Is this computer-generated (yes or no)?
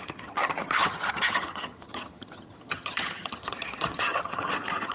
yes